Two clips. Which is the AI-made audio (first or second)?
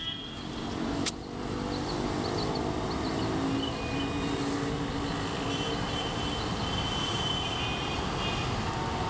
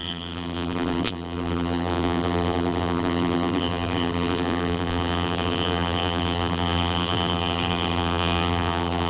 second